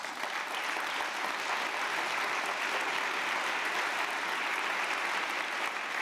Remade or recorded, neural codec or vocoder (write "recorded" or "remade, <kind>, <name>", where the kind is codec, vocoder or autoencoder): recorded